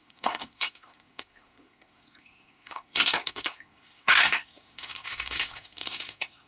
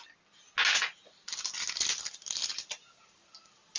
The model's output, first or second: first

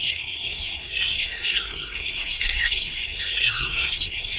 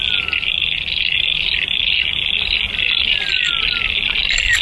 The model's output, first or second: first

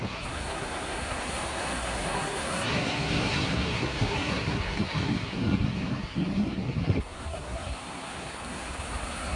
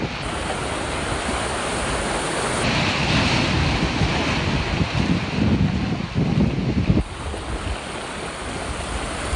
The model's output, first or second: first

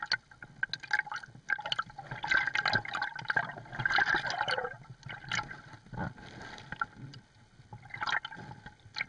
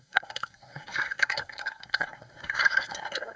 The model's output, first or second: second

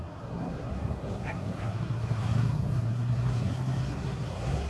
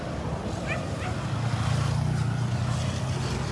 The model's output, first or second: first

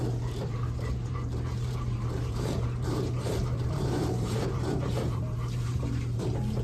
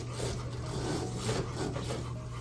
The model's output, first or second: first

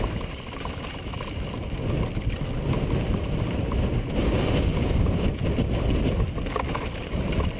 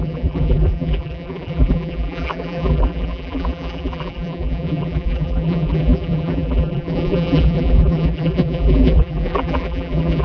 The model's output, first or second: second